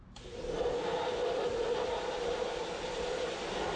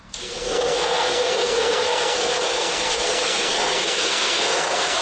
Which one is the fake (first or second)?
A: second